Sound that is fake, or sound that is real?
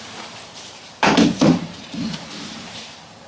fake